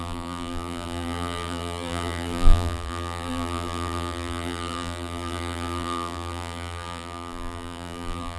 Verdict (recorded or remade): remade